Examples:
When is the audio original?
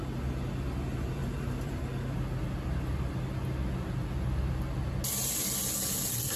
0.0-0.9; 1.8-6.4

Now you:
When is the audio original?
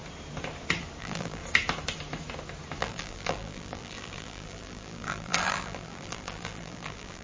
0.0-1.0; 1.4-2.8